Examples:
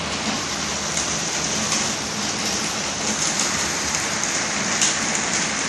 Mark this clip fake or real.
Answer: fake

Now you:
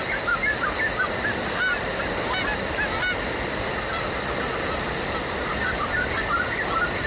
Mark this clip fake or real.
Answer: real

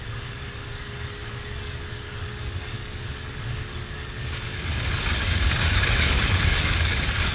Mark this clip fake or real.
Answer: fake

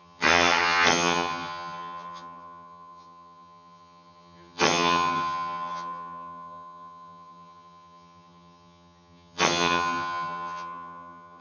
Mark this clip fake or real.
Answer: fake